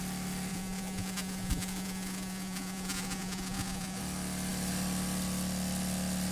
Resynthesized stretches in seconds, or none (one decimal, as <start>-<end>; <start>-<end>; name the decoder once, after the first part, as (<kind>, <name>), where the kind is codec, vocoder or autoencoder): 0.5-4.0 (vocoder, Vocos)